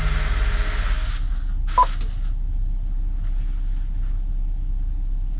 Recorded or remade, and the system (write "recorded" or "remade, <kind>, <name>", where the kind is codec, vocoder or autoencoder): recorded